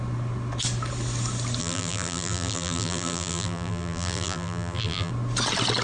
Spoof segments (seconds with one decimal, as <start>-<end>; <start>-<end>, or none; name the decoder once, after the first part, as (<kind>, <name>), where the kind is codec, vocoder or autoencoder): 1.6-5.1 (vocoder, BigVGAN v2)